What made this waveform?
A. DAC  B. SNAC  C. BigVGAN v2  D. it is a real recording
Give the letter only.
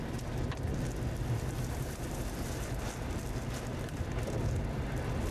D